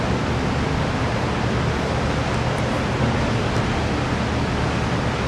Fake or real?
real